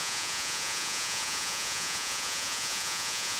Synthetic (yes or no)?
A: yes